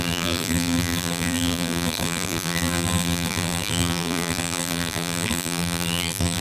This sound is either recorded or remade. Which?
remade